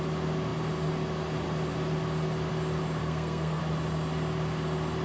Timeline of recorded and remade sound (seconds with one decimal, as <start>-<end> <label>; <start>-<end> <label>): 0.0-3.0 recorded; 3.0-3.6 remade; 3.6-5.0 recorded